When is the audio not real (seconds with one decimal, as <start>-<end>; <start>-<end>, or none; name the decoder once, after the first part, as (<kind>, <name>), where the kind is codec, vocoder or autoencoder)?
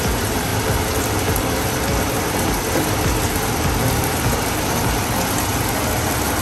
none